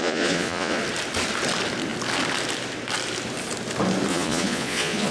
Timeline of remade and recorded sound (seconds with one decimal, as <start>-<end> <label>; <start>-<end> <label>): 0.0-0.8 remade; 0.8-4.1 recorded; 4.1-5.1 remade